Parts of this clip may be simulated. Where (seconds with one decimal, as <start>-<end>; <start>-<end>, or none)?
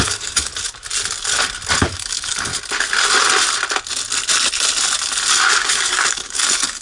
0.0-0.5; 1.8-2.5; 5.5-6.8